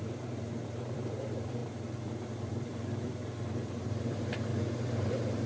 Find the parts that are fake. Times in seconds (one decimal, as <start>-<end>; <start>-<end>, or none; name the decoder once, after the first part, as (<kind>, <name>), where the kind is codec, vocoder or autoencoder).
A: 0.0-1.6 (vocoder, BigVGAN v2); 2.4-4.5; 5.1-5.5